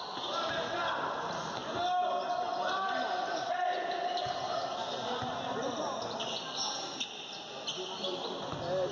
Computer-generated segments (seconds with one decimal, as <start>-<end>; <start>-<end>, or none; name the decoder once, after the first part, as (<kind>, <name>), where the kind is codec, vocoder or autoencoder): none